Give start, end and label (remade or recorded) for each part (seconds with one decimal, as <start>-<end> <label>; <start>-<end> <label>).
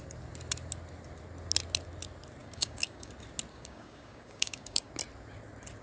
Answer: 0.0-2.4 recorded; 2.4-3.1 remade; 3.1-3.5 recorded; 3.5-4.9 remade; 4.9-5.8 recorded